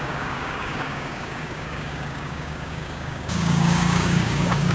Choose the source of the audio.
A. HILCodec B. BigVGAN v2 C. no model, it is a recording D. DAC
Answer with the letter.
D